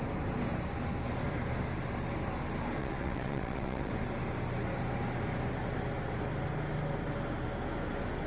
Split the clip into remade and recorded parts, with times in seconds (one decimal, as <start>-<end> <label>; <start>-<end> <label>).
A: 0.0-2.8 recorded; 2.8-3.9 remade; 3.9-8.3 recorded